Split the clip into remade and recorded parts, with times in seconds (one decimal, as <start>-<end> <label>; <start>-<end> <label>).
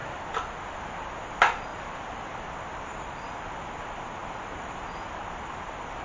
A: 0.0-6.0 recorded